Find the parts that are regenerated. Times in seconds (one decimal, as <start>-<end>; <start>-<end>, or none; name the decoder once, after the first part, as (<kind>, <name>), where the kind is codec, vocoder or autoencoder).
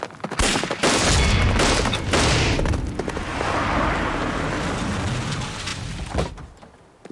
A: none